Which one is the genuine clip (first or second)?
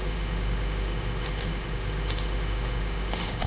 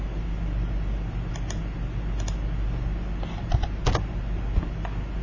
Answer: second